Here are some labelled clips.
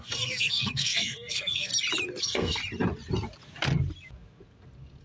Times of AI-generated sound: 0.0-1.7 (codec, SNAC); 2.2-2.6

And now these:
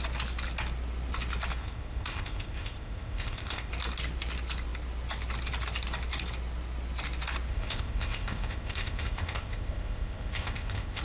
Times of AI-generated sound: 1.6-3.7 (codec, ZipCodec); 7.5-11.0

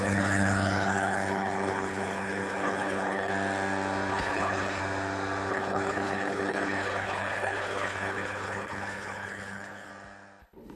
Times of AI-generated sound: 0.0-3.3 (codec, HILCodec); 4.1-4.8; 5.5-9.9; 10.4-10.8